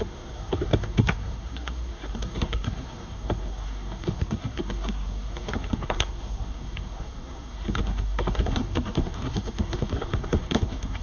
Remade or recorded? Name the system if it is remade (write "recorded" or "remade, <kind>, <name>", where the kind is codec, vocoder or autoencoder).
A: remade, codec, SNAC